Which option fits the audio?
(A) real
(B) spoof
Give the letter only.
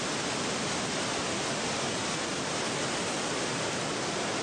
A